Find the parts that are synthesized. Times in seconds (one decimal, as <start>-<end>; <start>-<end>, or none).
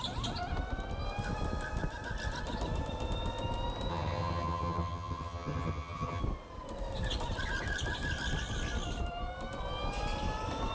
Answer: 3.9-6.2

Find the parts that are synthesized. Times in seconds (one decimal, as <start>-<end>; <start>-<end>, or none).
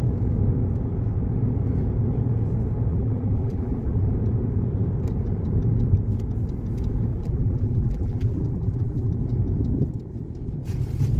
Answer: 2.9-4.1; 7.1-9.1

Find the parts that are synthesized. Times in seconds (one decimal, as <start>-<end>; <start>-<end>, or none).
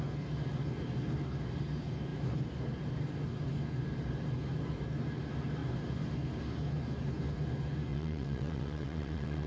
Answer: 7.9-9.5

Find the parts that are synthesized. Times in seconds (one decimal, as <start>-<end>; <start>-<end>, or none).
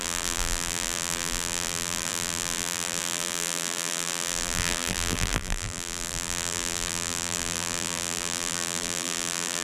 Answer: 0.0-9.6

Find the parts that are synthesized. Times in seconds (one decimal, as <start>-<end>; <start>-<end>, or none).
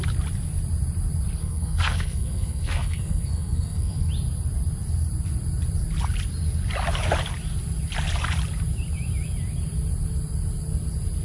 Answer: 1.4-4.1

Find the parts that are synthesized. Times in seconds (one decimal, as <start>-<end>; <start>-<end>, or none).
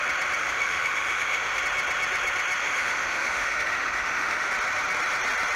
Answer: 0.4-1.6; 2.6-4.5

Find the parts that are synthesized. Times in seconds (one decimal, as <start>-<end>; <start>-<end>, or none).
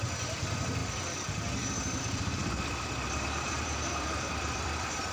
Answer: 0.0-0.8; 2.0-5.1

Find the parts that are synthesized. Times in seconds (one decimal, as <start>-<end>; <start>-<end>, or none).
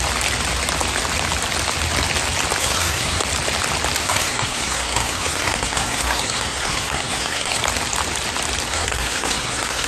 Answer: 2.6-3.2; 4.0-7.6; 8.7-9.9